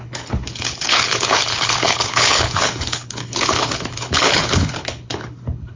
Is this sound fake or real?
fake